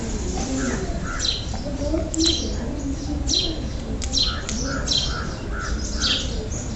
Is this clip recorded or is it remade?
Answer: recorded